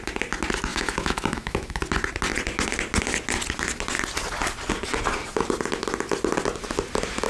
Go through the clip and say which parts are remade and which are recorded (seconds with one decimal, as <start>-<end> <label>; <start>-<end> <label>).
0.0-0.7 recorded; 0.7-1.8 remade; 1.8-7.3 recorded